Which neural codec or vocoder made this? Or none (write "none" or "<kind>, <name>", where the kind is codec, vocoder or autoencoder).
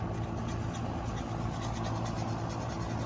none